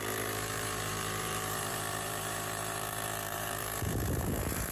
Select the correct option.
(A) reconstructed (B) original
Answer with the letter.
A